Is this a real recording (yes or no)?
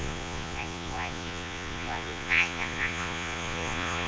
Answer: no